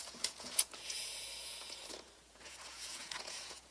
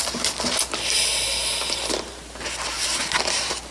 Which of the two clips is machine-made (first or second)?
first